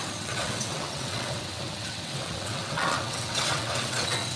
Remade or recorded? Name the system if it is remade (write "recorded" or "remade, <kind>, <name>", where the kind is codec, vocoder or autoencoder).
remade, vocoder, WaveNeXt